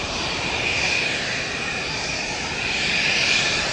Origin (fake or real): real